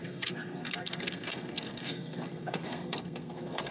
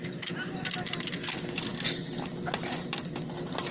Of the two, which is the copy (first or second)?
first